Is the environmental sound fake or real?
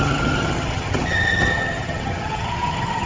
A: fake